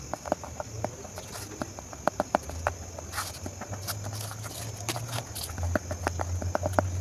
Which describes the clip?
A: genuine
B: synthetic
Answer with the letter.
A